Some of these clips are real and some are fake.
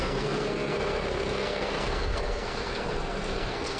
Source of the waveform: fake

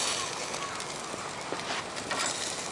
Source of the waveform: real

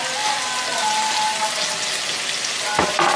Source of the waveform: real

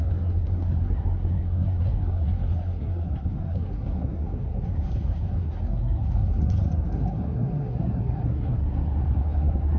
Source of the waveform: fake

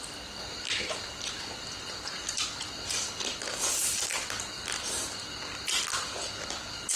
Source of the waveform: real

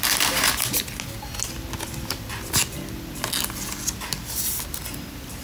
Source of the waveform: real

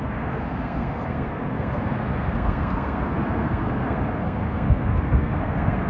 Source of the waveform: fake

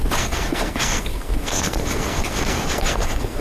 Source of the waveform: fake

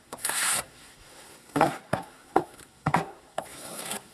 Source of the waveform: fake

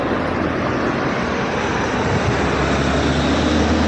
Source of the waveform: real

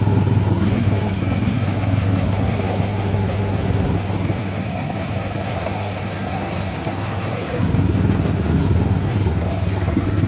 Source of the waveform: fake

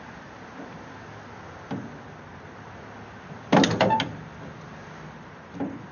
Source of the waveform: real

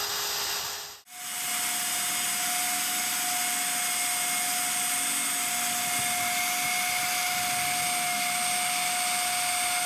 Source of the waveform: real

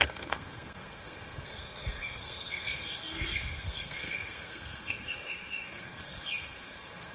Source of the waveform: fake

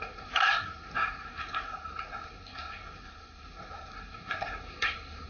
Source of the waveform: fake